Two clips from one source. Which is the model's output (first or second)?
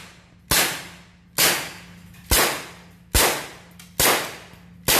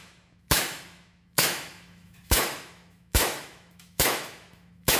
second